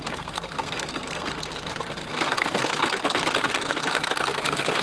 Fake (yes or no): yes